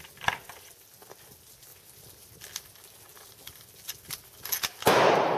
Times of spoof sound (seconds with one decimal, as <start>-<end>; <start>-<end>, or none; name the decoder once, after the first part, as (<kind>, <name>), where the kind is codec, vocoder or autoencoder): none